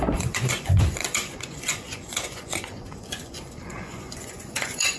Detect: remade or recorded remade